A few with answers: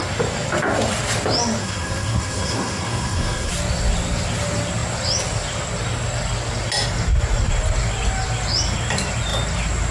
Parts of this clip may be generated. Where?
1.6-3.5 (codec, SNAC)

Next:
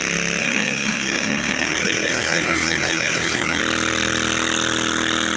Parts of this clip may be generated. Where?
0.4-3.6 (codec, SNAC)